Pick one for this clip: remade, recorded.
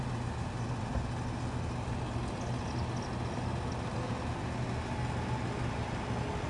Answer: recorded